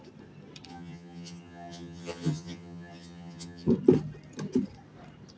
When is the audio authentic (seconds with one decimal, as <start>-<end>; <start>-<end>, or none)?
0.0-0.7; 3.7-5.4